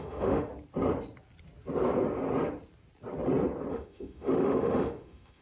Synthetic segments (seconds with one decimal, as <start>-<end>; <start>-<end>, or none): 0.0-0.5; 3.7-5.4